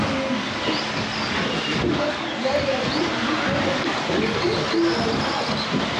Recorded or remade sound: recorded